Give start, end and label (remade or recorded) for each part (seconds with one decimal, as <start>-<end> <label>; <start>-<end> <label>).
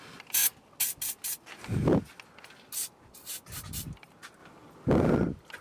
0.0-5.6 recorded